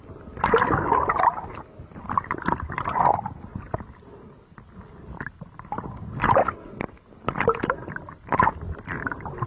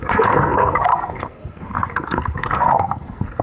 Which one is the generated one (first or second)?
second